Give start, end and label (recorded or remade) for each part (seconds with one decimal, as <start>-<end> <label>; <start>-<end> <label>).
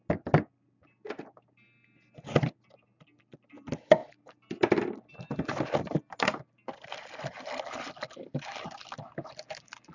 0.0-9.9 recorded